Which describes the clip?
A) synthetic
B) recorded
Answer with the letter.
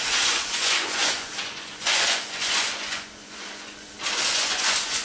A